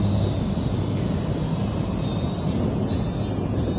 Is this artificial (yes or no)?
no